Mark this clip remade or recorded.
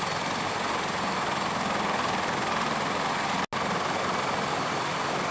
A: recorded